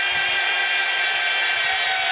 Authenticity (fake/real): real